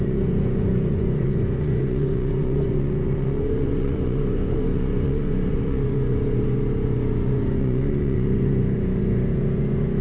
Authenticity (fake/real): fake